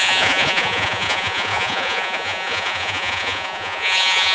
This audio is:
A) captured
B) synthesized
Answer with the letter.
B